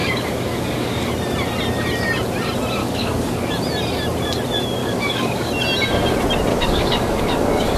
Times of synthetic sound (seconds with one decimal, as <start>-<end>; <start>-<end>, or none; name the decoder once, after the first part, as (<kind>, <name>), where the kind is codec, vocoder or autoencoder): 0.0-1.1 (codec, DAC); 2.8-3.5; 4.8-5.5; 6.5-7.8